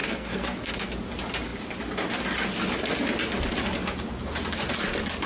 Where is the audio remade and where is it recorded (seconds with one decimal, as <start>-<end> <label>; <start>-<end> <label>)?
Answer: 0.0-0.9 remade; 0.9-5.3 recorded